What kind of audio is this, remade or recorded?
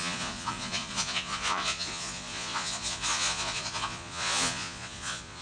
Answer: remade